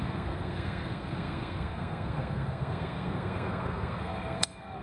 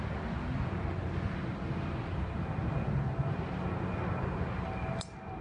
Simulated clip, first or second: first